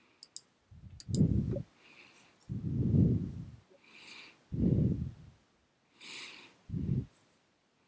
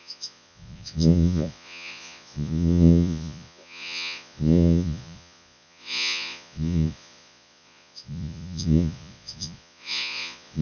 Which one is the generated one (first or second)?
second